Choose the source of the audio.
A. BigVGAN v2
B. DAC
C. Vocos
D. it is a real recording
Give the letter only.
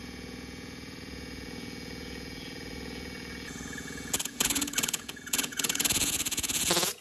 C